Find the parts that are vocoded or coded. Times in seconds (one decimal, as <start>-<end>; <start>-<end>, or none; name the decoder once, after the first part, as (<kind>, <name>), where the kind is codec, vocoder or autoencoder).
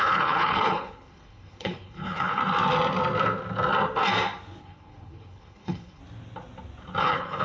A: 0.0-2.4 (codec, HILCodec); 4.6-6.0; 7.0-7.4